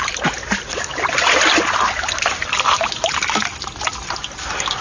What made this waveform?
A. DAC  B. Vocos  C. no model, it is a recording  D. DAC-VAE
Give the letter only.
C